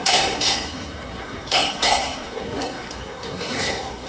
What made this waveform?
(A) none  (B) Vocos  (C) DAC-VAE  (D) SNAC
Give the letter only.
D